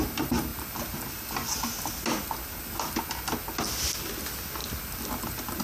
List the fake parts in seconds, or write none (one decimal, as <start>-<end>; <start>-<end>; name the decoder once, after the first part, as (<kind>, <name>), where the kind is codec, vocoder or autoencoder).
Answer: none